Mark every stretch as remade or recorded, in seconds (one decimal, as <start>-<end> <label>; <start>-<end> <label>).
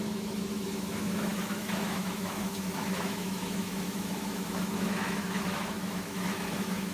0.0-6.9 remade